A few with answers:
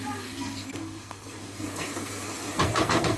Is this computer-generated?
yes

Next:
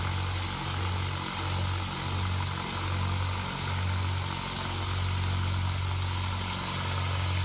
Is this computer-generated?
no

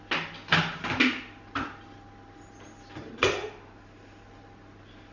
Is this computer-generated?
no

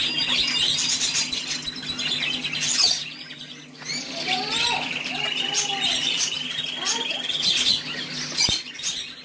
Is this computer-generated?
no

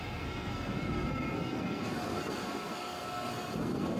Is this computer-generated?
yes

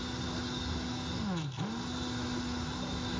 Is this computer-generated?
no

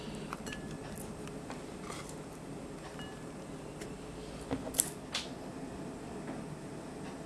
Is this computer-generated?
no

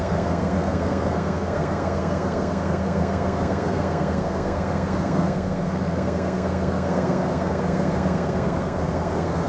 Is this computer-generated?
yes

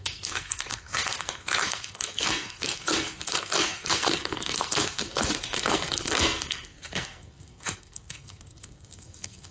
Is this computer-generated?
yes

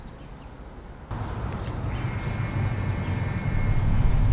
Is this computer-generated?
no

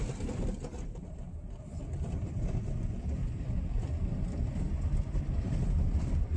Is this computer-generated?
no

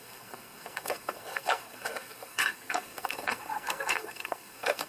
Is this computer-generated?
yes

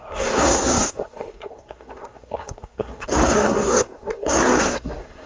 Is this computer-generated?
yes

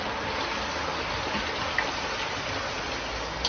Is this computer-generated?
no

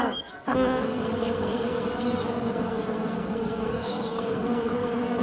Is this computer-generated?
yes